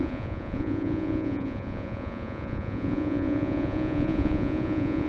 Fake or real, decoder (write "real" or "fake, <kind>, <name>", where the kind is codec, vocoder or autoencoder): fake, vocoder, Vocos